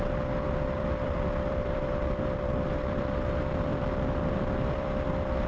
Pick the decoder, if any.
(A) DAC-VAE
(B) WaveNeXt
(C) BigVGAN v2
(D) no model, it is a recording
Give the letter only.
C